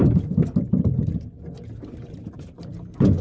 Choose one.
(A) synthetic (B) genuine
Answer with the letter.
B